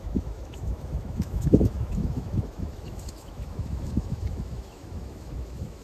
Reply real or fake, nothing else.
fake